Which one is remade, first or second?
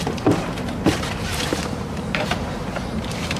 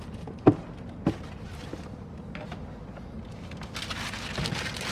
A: first